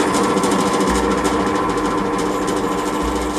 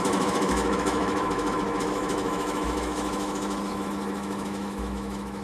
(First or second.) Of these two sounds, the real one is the first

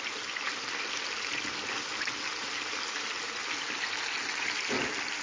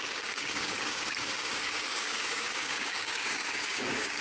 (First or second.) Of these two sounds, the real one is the first